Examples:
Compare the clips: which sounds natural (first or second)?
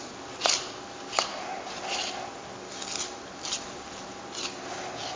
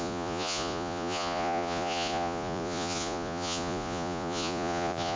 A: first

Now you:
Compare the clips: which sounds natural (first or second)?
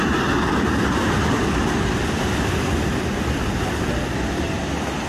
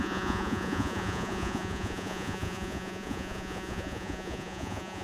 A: first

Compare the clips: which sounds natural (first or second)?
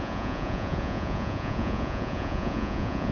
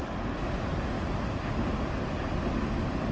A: second